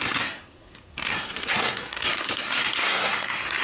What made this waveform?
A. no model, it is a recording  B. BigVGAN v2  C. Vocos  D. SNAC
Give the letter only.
D